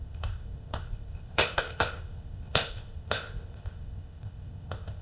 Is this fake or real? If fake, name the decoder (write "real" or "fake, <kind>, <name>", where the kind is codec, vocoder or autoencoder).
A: fake, codec, ZipCodec